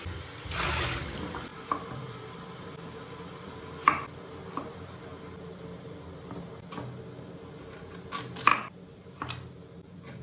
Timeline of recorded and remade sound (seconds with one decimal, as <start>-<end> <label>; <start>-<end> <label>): 0.0-1.5 recorded; 1.5-6.5 remade; 6.5-8.5 recorded; 8.5-10.2 remade